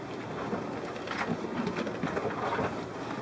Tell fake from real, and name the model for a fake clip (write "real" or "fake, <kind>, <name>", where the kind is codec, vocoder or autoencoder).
real